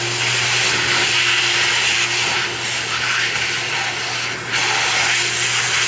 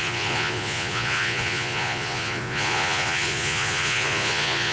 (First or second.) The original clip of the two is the first